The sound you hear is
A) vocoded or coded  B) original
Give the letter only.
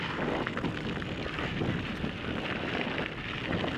B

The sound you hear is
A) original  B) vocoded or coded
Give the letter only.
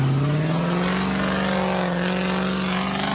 A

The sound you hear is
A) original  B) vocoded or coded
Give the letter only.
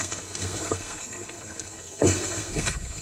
B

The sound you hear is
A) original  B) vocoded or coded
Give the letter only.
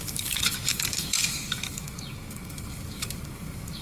B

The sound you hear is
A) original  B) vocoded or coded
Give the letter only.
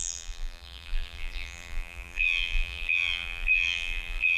B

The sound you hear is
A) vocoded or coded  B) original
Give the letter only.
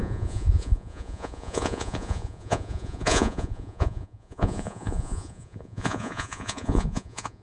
A